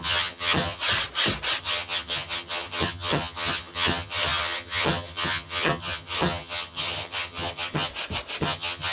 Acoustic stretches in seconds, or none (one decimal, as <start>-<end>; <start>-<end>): 0.8-1.6; 7.9-8.4